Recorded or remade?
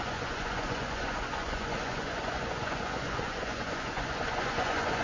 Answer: remade